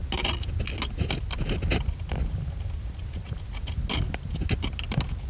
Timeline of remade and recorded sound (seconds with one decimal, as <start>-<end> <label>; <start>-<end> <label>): 0.0-5.3 recorded